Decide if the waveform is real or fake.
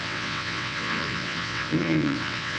fake